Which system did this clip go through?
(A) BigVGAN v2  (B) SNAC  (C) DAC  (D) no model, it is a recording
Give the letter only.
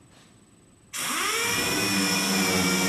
D